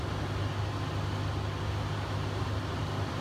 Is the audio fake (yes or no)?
no